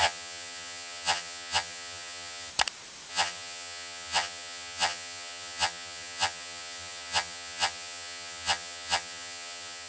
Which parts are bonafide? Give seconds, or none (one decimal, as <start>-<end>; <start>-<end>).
2.5-3.1